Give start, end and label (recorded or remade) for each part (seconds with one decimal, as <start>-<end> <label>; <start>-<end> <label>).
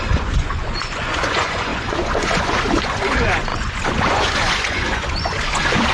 0.0-5.9 remade